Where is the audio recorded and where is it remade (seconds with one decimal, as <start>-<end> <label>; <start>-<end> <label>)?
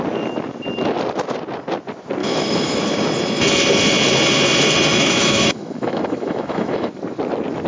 0.0-2.2 recorded; 2.2-2.8 remade; 2.8-4.9 recorded; 4.9-6.9 remade; 6.9-7.7 recorded